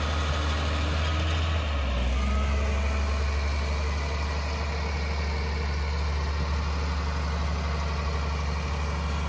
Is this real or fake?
real